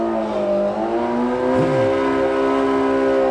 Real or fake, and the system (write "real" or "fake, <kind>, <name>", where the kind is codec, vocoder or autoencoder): real